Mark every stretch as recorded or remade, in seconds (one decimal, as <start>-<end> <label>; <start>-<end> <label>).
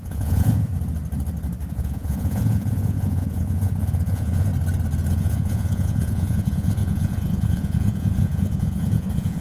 0.0-0.7 remade; 0.7-1.7 recorded; 1.7-4.5 remade; 4.5-5.1 recorded; 5.1-9.4 remade